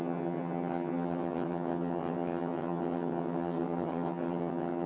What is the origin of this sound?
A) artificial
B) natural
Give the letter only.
A